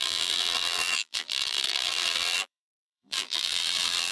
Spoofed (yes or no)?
yes